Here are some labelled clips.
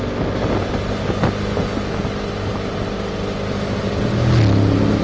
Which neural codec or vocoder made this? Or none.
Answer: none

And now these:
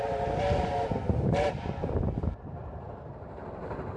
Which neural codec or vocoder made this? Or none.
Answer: vocoder, BigVGAN v2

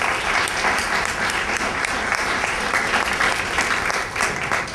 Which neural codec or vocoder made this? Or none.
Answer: none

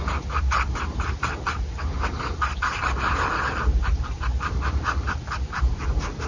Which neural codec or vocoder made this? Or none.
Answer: vocoder, BigVGAN v2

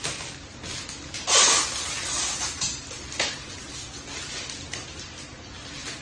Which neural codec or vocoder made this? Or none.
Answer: none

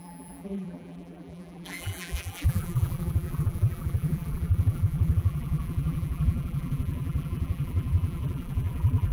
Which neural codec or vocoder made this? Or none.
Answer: vocoder, BigVGAN v2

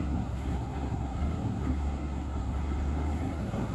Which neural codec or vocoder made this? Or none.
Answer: codec, SNAC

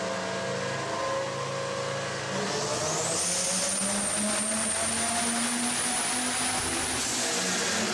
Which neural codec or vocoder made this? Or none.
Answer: none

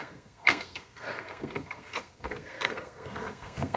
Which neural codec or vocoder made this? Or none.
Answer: codec, SNAC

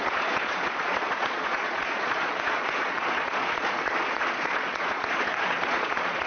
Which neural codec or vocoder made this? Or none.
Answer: vocoder, Vocos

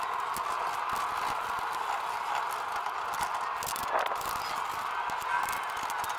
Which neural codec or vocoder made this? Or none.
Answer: none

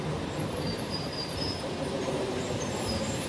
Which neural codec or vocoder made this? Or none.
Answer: vocoder, BigVGAN v2